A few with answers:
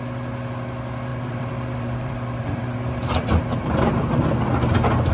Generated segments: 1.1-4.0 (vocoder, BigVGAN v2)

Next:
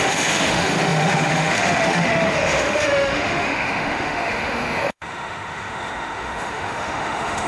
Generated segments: 0.0-7.5 (autoencoder, DAC-VAE)

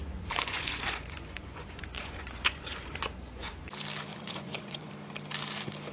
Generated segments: 0.0-3.5 (vocoder, Vocos); 4.1-4.9

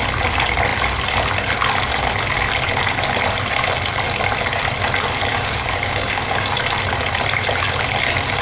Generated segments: 5.3-6.6 (codec, DAC)

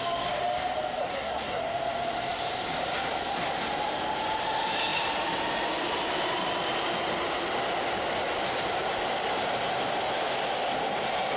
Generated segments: 1.0-1.6 (codec, SNAC)

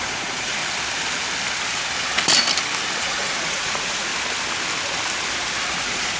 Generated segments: 0.0-0.6 (vocoder, Vocos); 3.0-4.1; 5.8-6.2

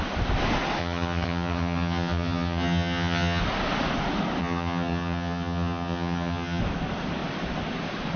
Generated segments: 0.8-3.4 (vocoder, HiFi-GAN); 4.4-6.6

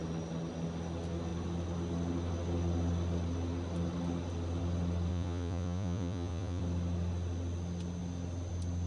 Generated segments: 5.1-6.6 (vocoder, Vocos)